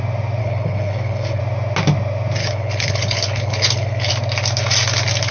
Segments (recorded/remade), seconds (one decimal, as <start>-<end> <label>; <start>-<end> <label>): 0.0-0.4 recorded; 0.4-1.4 remade; 1.4-2.4 recorded; 2.4-4.1 remade; 4.1-5.3 recorded